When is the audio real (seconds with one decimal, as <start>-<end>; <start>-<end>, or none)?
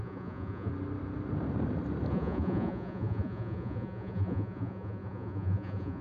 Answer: 0.7-2.1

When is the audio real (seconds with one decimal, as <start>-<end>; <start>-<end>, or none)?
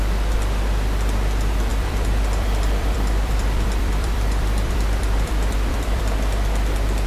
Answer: 0.0-1.7; 6.0-7.1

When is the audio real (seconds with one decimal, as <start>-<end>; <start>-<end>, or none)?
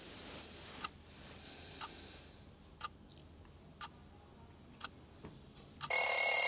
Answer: 0.0-6.5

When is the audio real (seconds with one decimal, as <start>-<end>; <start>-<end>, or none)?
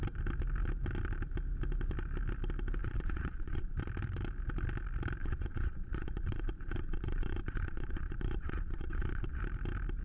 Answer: 0.0-2.8; 3.8-5.2; 9.4-10.0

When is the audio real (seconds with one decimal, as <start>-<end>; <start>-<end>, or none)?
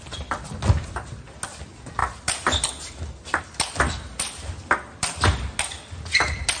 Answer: 0.0-6.6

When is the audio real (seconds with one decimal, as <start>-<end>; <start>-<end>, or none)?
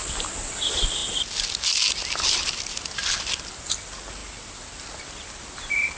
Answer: 0.0-6.0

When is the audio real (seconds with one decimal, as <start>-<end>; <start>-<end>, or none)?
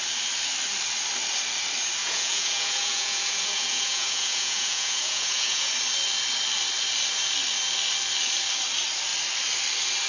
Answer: 0.0-2.0; 5.7-10.1